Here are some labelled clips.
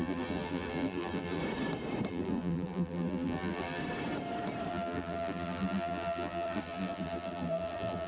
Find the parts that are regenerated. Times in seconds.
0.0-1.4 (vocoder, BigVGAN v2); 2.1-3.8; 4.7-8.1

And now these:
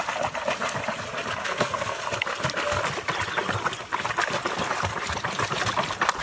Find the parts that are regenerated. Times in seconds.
1.4-2.0 (codec, SNAC)

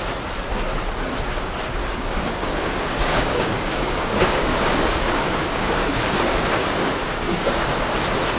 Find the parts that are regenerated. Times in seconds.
1.8-6.1 (codec, DAC); 6.6-7.8

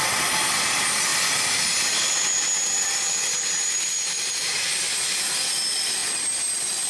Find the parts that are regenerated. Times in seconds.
none

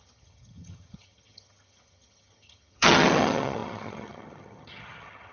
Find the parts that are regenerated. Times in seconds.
0.0-5.3 (vocoder, HiFi-GAN)